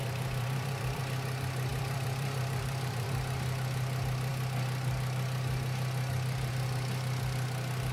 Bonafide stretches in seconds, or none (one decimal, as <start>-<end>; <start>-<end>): 1.0-1.7; 3.1-7.9